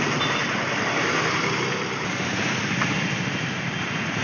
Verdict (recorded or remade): recorded